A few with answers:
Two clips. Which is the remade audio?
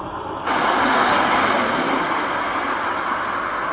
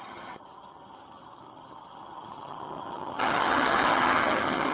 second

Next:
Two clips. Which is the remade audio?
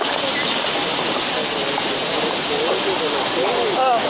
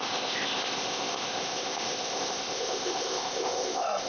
second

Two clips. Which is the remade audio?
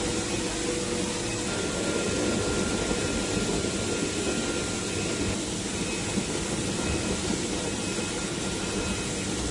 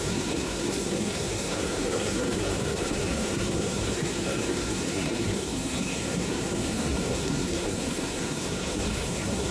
second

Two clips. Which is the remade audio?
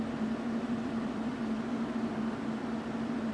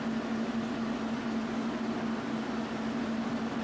first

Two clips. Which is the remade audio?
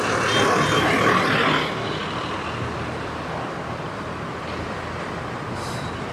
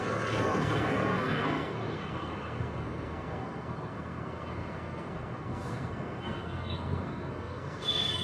second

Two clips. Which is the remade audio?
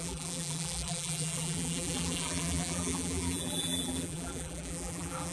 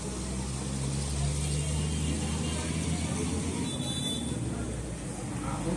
first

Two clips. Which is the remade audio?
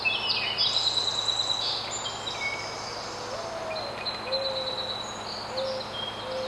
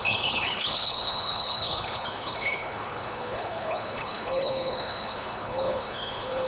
second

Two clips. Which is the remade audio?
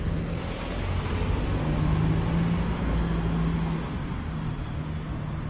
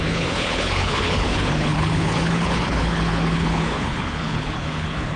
second